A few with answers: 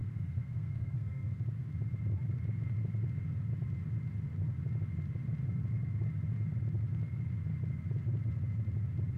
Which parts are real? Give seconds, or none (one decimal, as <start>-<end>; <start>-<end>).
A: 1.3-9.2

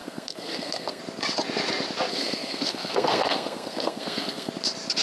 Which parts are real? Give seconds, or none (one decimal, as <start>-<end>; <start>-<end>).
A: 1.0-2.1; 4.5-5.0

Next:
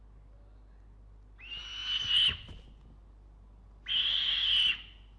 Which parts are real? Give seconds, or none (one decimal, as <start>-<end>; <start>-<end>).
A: 0.0-5.2